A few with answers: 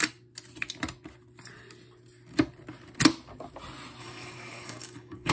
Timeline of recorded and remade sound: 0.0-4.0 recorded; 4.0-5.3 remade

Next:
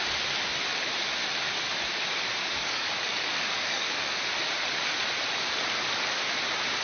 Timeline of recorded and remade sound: 0.0-2.4 recorded; 2.4-4.2 remade; 4.2-6.8 recorded

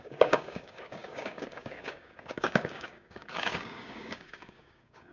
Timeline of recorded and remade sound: 0.0-5.1 remade

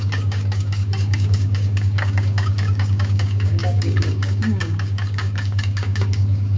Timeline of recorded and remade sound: 0.0-6.6 remade

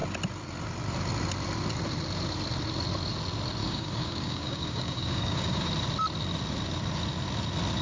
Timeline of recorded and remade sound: 0.0-3.6 recorded; 3.6-5.7 remade; 5.7-7.8 recorded

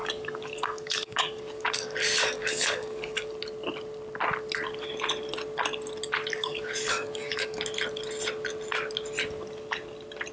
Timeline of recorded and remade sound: 0.0-3.3 remade; 3.3-6.3 recorded; 6.3-7.6 remade; 7.6-10.3 recorded

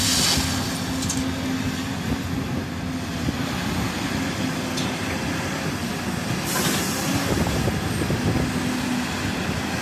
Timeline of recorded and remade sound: 0.0-9.8 recorded

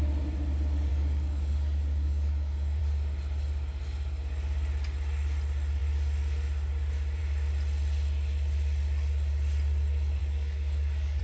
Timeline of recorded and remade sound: 0.0-0.9 recorded; 0.9-2.8 remade; 2.8-10.2 recorded; 10.2-11.2 remade